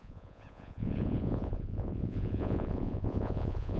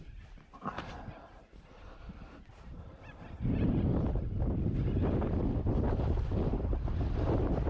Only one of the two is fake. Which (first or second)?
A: first